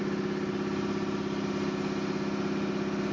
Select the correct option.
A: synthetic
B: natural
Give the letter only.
B